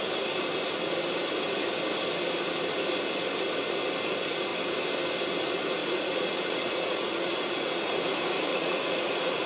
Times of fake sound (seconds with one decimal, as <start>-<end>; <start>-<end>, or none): 5.8-7.9; 8.5-9.5